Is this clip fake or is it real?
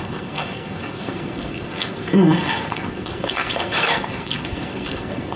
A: fake